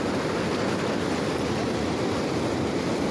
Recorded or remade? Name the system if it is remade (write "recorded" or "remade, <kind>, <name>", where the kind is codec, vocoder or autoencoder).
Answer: recorded